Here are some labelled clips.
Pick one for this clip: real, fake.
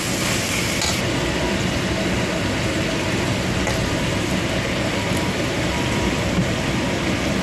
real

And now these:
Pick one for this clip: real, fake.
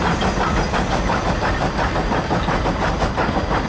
real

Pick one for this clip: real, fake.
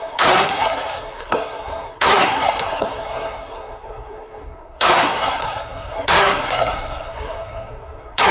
fake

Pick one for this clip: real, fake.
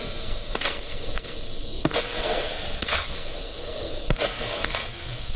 fake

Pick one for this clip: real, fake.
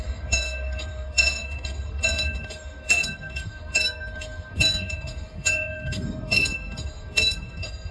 fake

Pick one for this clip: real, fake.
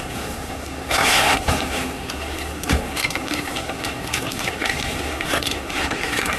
fake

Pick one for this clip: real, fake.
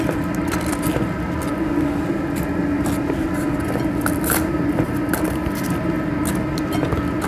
real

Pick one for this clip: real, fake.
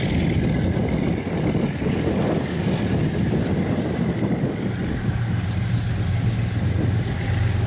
real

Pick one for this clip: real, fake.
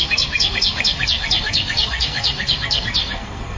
fake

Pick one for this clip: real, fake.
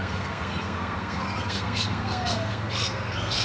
fake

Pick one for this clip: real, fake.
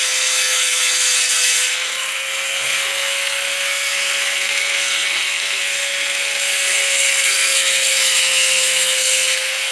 fake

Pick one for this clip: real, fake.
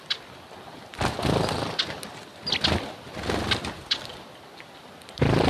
real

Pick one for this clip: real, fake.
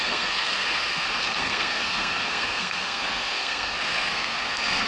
fake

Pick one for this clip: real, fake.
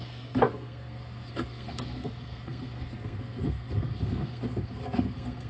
fake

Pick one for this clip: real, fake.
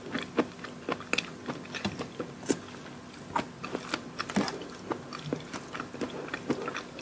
real